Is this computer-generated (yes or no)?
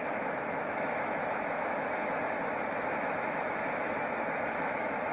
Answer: yes